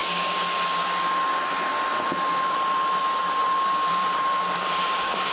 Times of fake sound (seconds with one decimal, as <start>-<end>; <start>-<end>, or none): 1.9-3.0; 3.4-5.3